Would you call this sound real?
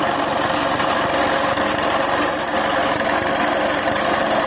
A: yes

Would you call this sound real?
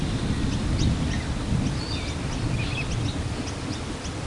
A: yes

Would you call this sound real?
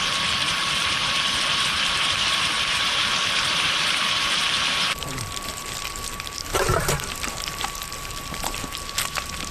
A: no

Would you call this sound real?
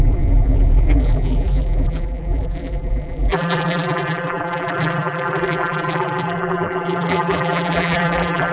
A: no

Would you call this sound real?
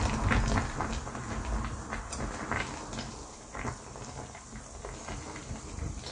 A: yes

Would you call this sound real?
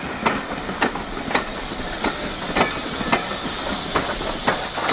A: yes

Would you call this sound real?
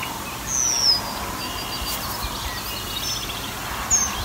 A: yes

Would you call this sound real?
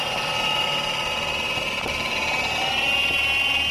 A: yes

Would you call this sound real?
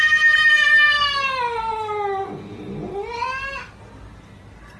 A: yes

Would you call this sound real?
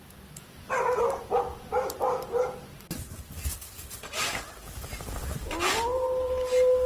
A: yes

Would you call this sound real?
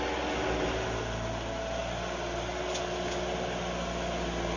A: yes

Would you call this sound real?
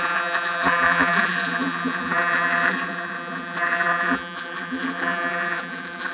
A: no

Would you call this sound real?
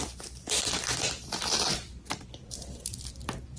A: no